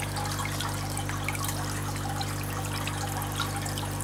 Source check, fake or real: real